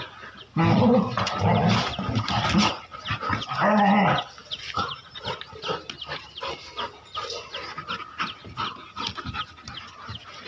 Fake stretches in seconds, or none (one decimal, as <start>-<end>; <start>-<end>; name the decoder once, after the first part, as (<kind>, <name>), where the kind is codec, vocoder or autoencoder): none